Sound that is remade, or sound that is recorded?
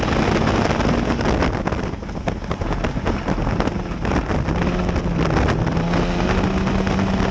recorded